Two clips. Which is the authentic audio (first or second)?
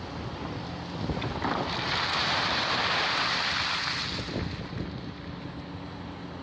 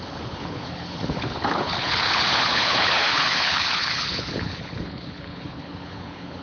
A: first